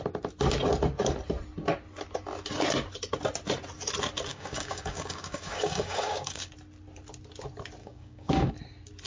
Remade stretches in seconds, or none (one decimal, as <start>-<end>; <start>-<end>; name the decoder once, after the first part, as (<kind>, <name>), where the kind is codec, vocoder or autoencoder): 4.3-6.5 (codec, DAC); 7.8-8.5